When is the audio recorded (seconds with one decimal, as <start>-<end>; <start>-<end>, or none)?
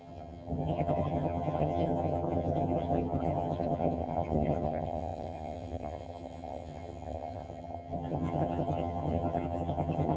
none